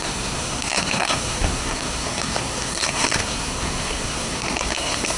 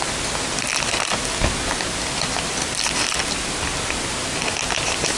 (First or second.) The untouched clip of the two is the second